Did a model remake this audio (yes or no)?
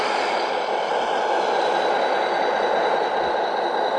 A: no